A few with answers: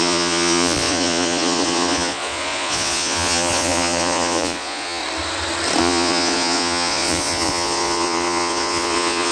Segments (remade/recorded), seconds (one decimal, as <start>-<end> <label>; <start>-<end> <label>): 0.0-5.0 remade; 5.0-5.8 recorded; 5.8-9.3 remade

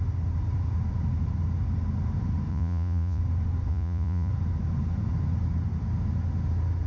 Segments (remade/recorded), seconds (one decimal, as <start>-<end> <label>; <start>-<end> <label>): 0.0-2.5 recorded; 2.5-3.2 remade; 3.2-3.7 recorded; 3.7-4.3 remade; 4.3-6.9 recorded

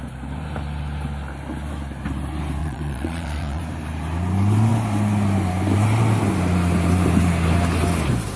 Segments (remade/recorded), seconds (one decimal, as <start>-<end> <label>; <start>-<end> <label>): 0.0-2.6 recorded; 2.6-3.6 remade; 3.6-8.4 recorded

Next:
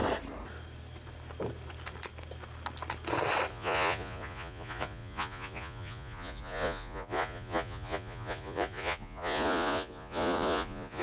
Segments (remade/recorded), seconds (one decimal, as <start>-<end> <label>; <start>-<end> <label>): 0.0-3.5 recorded; 3.5-11.0 remade

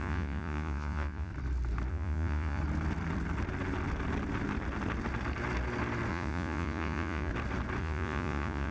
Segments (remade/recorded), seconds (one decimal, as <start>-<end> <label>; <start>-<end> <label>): 0.0-1.3 remade; 1.3-1.9 recorded; 1.9-2.6 remade; 2.6-6.1 recorded; 6.1-7.3 remade; 7.3-7.8 recorded; 7.8-8.7 remade